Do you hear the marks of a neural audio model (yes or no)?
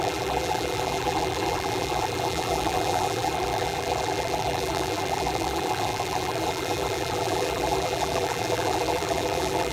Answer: yes